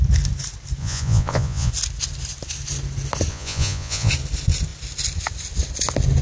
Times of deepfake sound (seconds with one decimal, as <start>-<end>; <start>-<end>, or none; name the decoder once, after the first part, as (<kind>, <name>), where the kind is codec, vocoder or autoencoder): 0.8-1.7 (vocoder, Vocos); 3.3-4.1